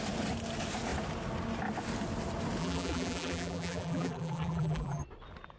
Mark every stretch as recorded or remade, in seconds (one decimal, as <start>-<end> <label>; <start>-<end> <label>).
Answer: 0.0-2.6 recorded; 2.6-5.0 remade; 5.0-5.6 recorded

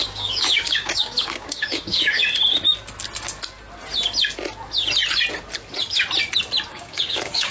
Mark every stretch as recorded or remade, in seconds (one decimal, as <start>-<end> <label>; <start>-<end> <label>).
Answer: 0.0-2.2 remade; 2.2-6.7 recorded; 6.7-7.5 remade

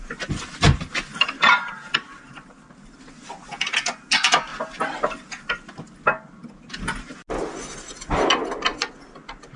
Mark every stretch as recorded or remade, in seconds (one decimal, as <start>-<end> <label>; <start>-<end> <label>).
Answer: 0.0-1.1 recorded; 1.1-3.0 remade; 3.0-9.6 recorded

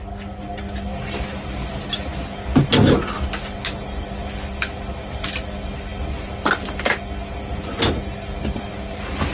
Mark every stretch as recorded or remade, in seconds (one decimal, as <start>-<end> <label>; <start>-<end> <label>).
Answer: 0.0-9.3 recorded

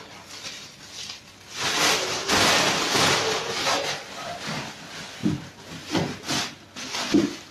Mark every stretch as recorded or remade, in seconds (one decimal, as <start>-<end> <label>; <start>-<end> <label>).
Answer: 0.0-7.5 recorded

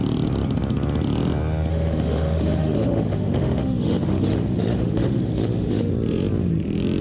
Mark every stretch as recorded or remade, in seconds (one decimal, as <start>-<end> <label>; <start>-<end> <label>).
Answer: 0.0-1.7 recorded; 1.7-5.9 remade; 5.9-7.0 recorded

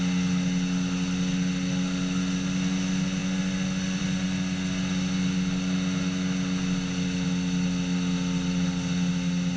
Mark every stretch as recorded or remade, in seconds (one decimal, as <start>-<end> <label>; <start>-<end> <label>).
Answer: 0.0-9.6 recorded

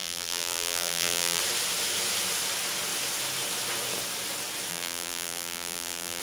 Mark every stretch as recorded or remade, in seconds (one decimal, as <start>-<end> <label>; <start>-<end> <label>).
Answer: 0.0-1.4 remade; 1.4-4.7 recorded; 4.7-6.2 remade